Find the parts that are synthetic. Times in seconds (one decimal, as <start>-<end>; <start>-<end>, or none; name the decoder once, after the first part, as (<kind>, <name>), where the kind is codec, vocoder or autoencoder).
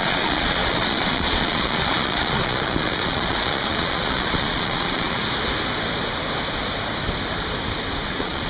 0.0-5.2 (vocoder, Vocos); 8.0-8.5